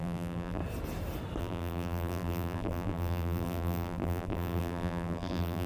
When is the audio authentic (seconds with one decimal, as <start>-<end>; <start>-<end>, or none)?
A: 0.6-1.4